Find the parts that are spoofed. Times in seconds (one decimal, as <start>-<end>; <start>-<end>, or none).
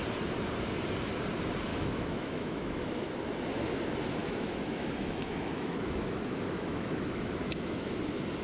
1.7-3.1; 4.2-8.0